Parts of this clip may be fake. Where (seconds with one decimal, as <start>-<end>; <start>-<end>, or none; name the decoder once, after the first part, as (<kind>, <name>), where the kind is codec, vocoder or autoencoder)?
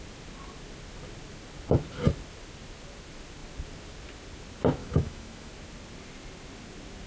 4.8-5.5 (autoencoder, DAC-VAE)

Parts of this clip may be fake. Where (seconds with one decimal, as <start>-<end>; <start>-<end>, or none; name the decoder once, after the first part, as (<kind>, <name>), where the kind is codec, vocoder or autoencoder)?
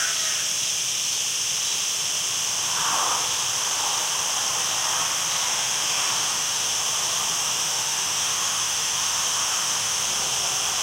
5.5-6.8 (autoencoder, DAC-VAE); 7.4-10.0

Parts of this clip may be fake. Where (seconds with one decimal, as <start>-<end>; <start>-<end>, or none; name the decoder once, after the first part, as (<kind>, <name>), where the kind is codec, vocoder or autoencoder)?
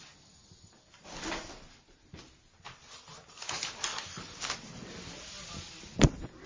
0.4-2.2 (vocoder, BigVGAN v2); 3.9-4.4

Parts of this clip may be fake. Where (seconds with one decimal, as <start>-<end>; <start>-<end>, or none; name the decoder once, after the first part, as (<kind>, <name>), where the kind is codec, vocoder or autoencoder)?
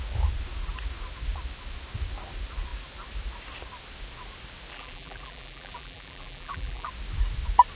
4.7-6.9 (vocoder, BigVGAN v2)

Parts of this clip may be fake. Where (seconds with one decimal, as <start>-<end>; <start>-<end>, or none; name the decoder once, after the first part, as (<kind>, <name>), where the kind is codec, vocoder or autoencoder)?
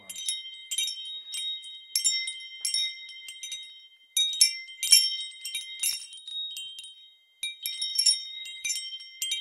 7.9-8.7 (vocoder, BigVGAN v2)